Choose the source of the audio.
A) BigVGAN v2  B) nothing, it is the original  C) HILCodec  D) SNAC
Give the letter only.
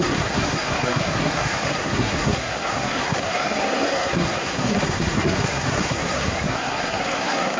D